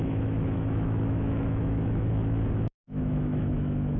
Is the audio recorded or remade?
remade